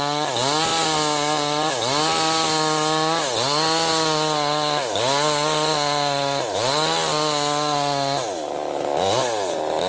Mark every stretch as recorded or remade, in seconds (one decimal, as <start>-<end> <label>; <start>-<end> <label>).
0.0-9.9 recorded